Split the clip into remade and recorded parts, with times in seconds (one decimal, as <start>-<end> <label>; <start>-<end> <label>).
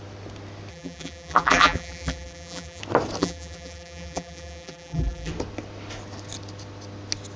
0.0-0.7 recorded; 0.7-2.8 remade; 2.8-3.2 recorded; 3.2-5.3 remade; 5.3-7.4 recorded